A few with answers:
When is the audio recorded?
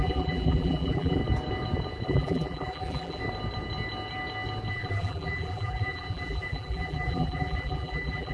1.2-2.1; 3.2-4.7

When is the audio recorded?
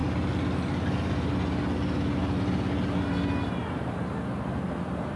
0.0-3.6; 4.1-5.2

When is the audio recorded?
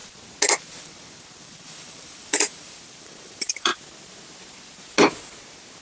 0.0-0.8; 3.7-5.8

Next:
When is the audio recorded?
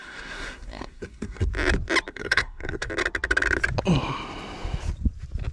1.5-2.1; 2.9-5.5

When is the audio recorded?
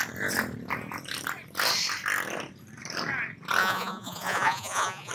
0.0-3.6